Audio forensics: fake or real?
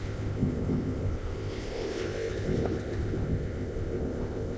fake